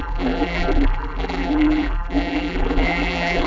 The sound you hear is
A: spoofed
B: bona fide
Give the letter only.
A